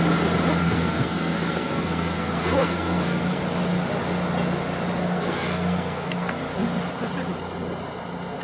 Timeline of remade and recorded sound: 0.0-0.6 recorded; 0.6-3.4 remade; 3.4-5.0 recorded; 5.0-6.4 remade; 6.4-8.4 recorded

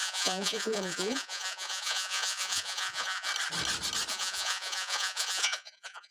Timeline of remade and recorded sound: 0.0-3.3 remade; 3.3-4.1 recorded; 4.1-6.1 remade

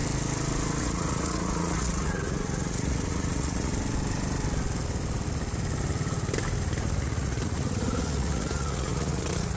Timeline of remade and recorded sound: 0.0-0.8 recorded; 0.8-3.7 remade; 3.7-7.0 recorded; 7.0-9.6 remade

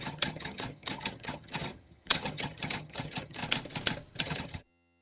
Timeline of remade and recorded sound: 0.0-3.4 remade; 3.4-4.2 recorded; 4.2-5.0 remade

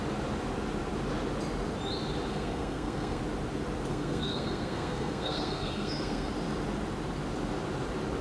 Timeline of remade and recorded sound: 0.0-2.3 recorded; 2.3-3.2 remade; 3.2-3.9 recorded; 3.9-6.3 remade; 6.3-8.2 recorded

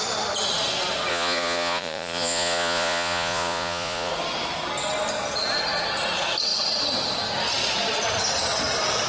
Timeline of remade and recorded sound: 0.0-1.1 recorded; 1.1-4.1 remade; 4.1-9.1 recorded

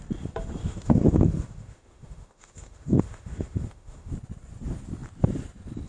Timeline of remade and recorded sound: 0.0-0.6 recorded; 0.6-4.1 remade; 4.1-5.9 recorded

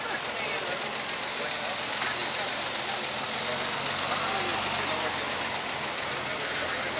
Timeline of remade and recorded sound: 0.0-7.0 recorded